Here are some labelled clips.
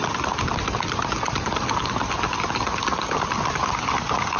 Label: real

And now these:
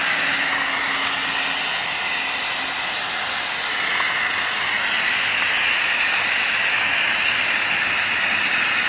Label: real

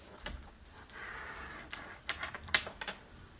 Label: real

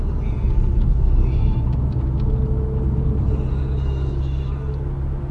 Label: real